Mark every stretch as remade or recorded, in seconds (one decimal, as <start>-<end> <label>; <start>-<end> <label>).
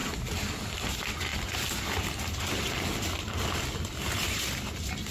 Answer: 0.0-0.9 remade; 0.9-1.3 recorded; 1.3-4.4 remade; 4.4-5.1 recorded